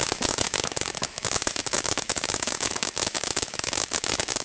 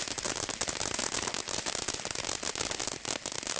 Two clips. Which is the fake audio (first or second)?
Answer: first